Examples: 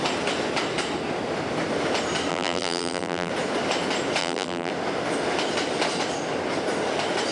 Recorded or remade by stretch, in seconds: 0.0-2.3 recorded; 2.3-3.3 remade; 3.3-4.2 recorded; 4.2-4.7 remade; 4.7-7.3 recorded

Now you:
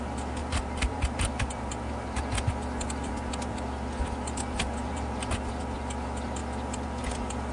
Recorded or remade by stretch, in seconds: 0.0-0.4 recorded; 0.4-2.2 remade; 2.2-4.8 recorded; 4.8-5.3 remade; 5.3-7.5 recorded